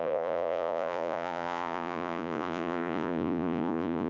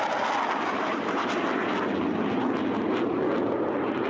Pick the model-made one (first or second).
first